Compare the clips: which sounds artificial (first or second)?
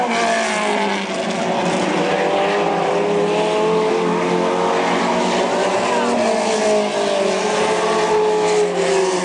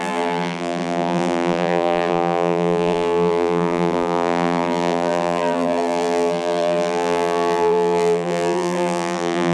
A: second